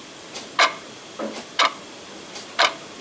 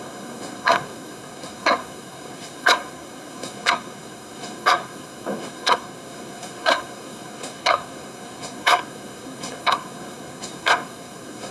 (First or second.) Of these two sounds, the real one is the first